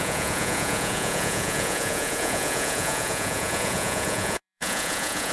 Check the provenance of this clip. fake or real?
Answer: fake